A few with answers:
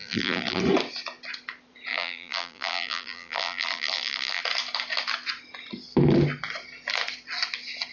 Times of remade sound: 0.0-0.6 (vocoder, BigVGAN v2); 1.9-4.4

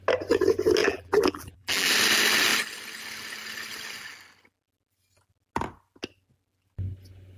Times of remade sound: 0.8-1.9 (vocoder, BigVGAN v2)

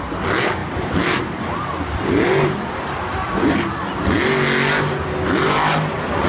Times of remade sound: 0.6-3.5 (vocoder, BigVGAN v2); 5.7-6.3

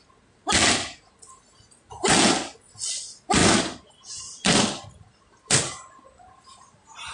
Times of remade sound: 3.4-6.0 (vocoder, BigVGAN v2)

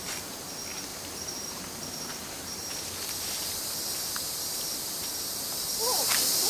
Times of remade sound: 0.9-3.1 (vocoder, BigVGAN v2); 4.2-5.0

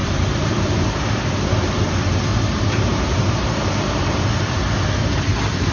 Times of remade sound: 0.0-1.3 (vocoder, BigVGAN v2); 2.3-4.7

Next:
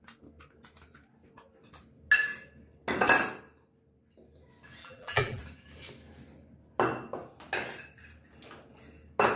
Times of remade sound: 4.8-5.4 (vocoder, BigVGAN v2)